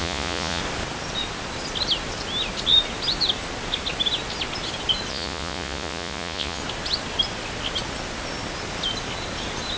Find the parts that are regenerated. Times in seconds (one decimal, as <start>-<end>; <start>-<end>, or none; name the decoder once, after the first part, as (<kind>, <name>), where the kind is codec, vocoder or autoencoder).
0.0-0.6 (vocoder, Vocos); 5.1-6.6